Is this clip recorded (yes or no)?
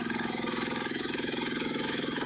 no